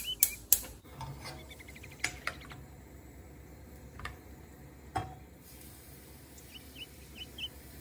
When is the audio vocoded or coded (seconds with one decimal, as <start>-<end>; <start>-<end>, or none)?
none